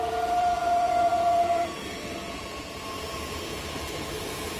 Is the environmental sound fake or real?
fake